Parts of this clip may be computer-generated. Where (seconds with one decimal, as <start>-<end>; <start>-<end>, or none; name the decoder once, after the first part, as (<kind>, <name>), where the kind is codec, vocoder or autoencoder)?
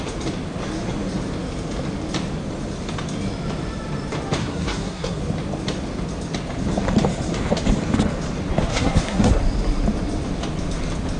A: 4.4-5.2 (codec, SNAC); 8.7-9.3